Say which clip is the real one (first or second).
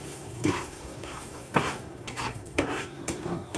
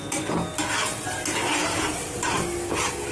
second